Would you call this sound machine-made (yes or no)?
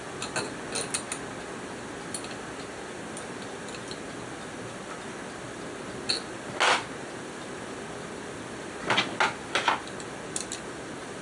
no